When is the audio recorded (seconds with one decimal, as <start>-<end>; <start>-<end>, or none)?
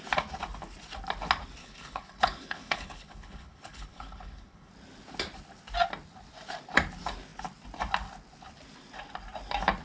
0.0-1.6; 4.7-9.8